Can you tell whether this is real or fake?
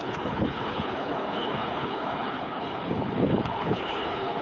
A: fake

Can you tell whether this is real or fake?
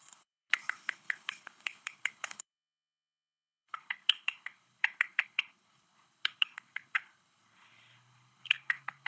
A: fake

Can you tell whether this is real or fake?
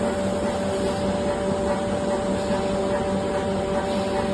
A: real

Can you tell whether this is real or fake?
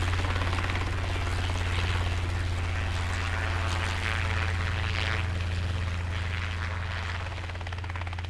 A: real